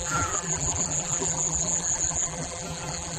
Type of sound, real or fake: fake